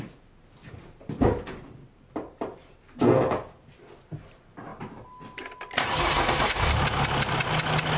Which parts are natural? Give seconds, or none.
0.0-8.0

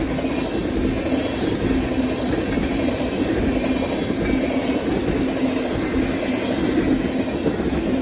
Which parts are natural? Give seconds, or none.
0.0-2.6; 3.4-8.0

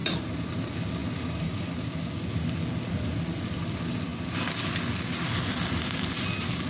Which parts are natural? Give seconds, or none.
0.6-1.0; 1.9-6.7

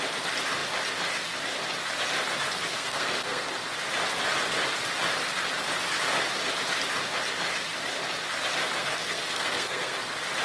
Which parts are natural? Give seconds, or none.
0.0-2.7; 3.5-8.8; 10.0-10.4

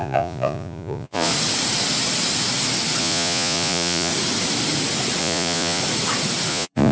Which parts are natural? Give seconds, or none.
1.3-3.0; 4.1-5.2; 5.8-6.5

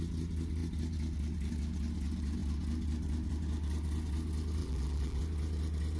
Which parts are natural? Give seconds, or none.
0.0-4.6; 5.2-6.0

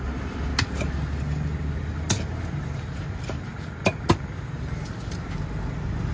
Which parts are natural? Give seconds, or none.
0.0-6.1